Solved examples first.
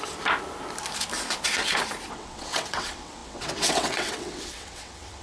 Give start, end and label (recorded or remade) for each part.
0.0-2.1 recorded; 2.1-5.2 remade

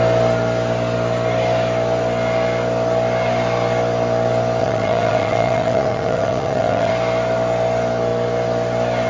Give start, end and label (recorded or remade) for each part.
0.0-4.6 recorded; 4.6-6.9 remade; 6.9-9.1 recorded